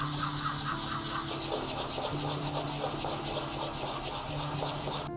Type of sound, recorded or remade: recorded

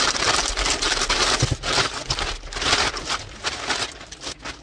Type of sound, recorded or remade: recorded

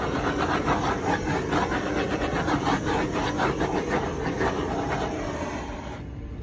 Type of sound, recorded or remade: recorded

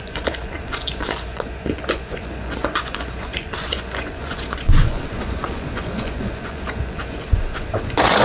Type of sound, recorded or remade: remade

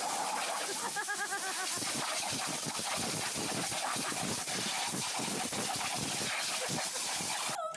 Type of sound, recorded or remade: recorded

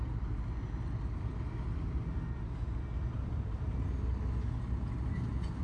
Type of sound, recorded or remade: recorded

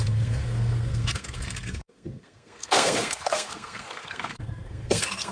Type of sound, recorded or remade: remade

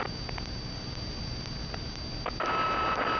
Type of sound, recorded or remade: recorded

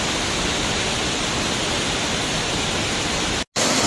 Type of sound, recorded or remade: recorded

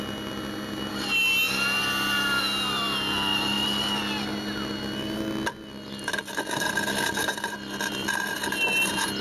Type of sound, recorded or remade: recorded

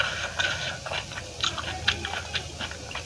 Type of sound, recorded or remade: recorded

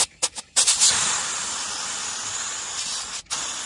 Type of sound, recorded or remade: recorded